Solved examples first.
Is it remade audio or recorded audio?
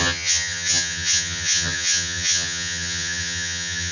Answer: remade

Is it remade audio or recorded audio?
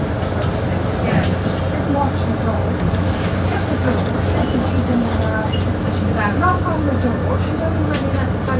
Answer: recorded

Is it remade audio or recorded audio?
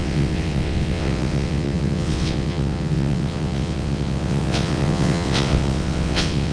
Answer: remade